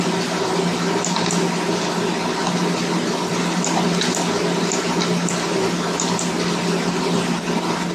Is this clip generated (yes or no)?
no